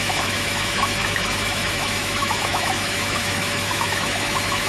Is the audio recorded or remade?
remade